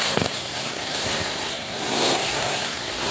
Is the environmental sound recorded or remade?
remade